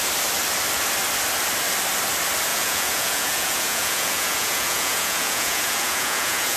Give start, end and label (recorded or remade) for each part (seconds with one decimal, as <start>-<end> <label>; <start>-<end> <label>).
0.0-2.5 recorded; 2.5-6.6 remade